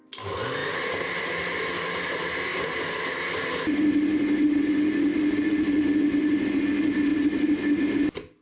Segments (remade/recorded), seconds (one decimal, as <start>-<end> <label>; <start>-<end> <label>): 0.0-0.6 recorded; 0.6-2.0 remade; 2.0-5.1 recorded; 5.1-5.8 remade; 5.8-7.1 recorded; 7.1-7.6 remade; 7.6-8.4 recorded